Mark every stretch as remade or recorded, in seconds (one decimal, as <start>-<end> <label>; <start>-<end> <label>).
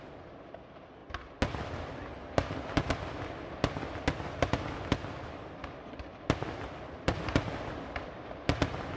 0.0-9.0 recorded